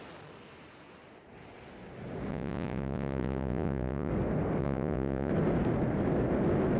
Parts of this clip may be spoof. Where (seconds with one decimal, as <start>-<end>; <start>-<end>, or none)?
2.3-4.1; 4.6-5.3